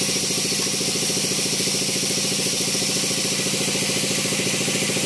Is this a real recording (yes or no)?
yes